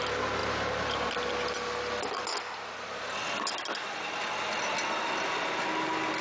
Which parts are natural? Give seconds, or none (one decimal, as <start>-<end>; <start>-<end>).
0.0-6.2